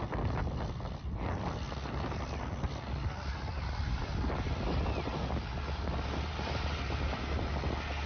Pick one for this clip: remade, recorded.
recorded